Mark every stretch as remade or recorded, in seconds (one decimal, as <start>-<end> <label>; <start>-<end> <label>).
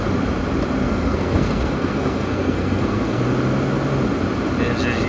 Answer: 0.0-0.8 recorded; 0.8-3.2 remade; 3.2-5.1 recorded